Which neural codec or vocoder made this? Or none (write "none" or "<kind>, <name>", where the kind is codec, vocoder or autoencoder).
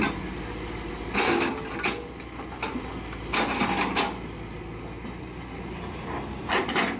none